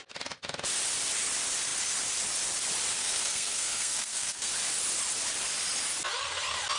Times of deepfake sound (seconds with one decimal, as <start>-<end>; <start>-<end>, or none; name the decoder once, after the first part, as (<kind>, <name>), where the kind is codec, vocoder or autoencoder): 3.0-4.5 (codec, SNAC)